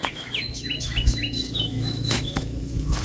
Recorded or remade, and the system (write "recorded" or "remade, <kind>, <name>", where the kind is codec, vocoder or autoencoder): remade, autoencoder, DAC-VAE